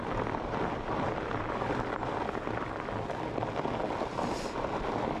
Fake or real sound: real